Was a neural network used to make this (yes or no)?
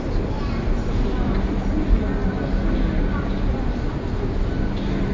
no